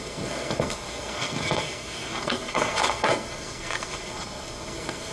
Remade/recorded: remade